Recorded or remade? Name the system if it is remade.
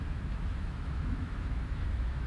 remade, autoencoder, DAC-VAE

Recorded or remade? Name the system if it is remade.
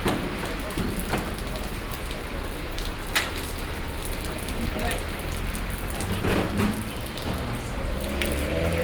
recorded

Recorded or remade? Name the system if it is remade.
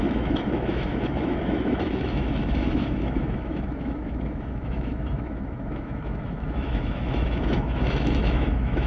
remade, autoencoder, DAC-VAE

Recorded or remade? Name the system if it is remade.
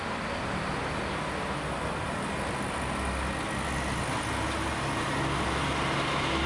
recorded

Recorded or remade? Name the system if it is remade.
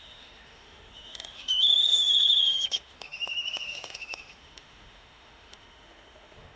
remade, autoencoder, DAC-VAE